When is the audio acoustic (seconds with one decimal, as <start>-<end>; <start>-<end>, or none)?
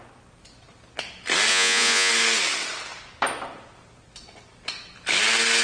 0.0-1.5; 2.1-5.6